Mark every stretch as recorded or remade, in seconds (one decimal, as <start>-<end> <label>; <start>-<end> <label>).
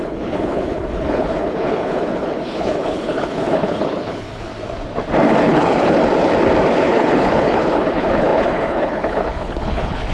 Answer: 0.0-4.5 remade; 4.5-5.4 recorded; 5.4-6.0 remade; 6.0-6.8 recorded; 6.8-10.1 remade